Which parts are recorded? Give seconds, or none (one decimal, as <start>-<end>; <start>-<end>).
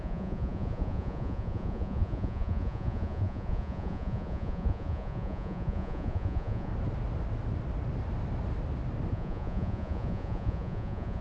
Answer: 6.7-9.1